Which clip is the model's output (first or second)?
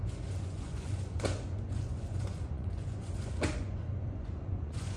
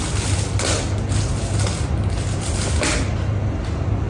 first